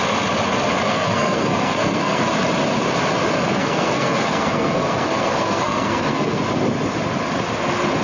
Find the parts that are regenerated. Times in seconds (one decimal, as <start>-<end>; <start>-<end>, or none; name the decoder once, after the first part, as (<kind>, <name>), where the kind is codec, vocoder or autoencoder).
0.9-2.2 (codec, SNAC); 3.6-6.4

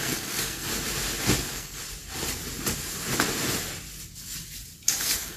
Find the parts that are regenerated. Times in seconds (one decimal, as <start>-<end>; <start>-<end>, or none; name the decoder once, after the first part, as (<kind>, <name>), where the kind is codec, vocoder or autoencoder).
0.0-0.7 (codec, SNAC); 1.4-1.8; 5.0-5.4

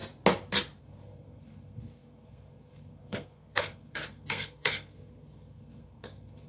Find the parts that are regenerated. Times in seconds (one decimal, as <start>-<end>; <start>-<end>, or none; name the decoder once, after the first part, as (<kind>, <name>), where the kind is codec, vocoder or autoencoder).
0.8-6.5 (codec, SNAC)

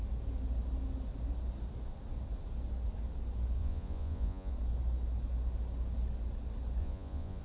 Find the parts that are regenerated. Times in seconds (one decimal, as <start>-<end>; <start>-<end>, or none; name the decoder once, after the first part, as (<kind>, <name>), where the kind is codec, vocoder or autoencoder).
3.6-4.5 (vocoder, Vocos); 6.8-7.4